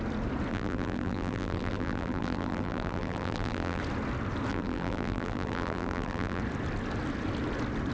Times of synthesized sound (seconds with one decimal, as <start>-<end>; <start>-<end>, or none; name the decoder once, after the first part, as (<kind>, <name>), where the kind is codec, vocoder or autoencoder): 0.5-3.8 (vocoder, BigVGAN v2); 4.5-6.4